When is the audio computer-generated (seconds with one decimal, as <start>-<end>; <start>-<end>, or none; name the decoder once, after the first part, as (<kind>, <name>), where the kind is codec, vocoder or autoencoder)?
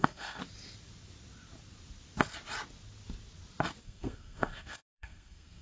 0.0-0.4 (codec, SNAC); 3.8-5.6